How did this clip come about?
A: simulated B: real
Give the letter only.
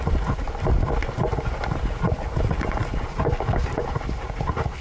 B